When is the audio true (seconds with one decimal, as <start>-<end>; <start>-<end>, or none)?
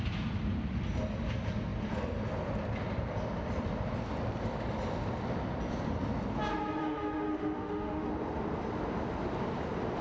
0.0-6.8; 8.1-10.0